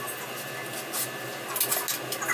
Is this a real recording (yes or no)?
yes